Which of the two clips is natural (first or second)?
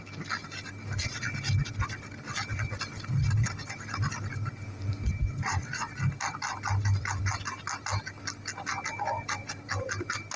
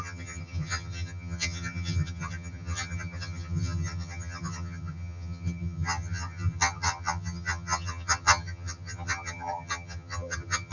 first